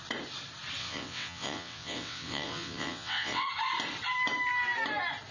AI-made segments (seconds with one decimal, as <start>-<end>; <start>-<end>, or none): 0.8-3.5

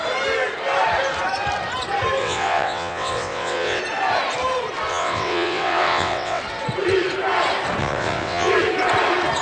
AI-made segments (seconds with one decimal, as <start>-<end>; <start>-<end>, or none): 2.2-3.8; 4.9-6.4; 7.8-8.5

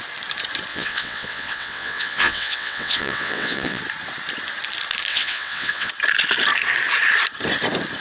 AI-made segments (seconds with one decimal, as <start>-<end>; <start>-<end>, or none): 0.7-3.8; 5.1-5.9

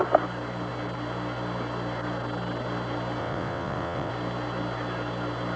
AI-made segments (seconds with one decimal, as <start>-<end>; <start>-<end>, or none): 3.2-4.1

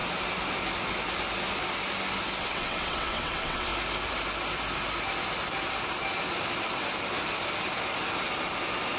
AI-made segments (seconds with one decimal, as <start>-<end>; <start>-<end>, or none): 2.4-3.7

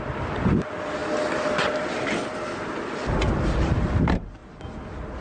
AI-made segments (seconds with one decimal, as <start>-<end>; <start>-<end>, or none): none

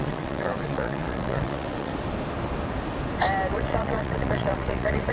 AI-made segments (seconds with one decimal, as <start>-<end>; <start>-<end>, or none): 0.0-1.9; 3.5-5.1